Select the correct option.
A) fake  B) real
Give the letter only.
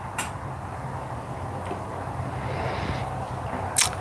B